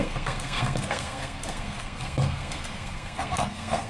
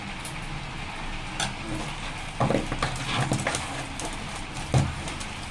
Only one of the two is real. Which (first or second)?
second